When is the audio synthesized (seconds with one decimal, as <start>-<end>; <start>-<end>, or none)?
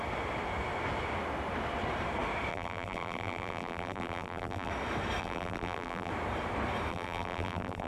2.5-4.7; 5.2-6.1; 6.9-7.9